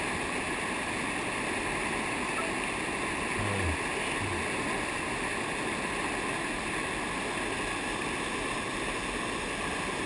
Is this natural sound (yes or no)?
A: yes